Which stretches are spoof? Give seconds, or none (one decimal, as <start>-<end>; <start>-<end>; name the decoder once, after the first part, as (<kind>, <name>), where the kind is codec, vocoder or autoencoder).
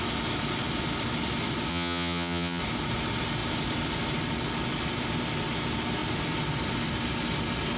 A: 1.7-2.6 (vocoder, HiFi-GAN)